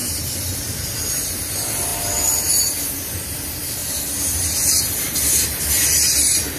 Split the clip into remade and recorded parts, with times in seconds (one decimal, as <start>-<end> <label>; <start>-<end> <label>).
0.0-6.6 recorded